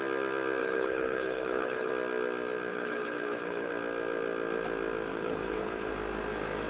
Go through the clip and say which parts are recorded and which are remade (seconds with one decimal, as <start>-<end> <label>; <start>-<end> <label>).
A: 0.0-0.6 recorded; 0.6-1.9 remade; 1.9-2.7 recorded; 2.7-3.7 remade; 3.7-5.1 recorded; 5.1-5.9 remade; 5.9-6.7 recorded